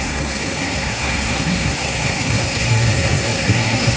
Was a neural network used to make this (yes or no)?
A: yes